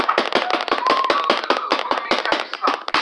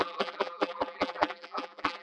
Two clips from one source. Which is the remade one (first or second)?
second